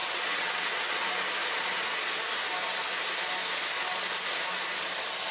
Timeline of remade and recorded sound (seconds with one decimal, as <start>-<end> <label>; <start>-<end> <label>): 0.0-0.7 remade; 0.7-5.3 recorded